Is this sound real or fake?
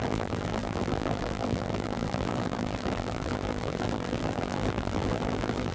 fake